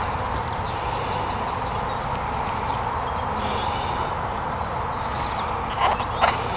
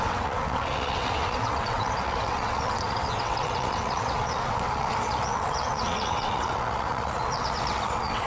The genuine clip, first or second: first